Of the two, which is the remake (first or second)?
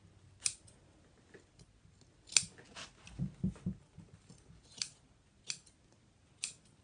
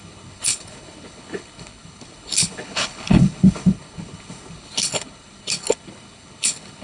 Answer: second